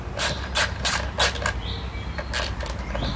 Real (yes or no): yes